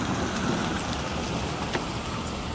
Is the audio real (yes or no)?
yes